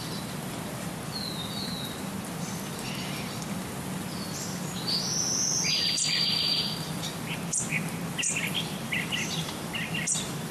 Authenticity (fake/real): real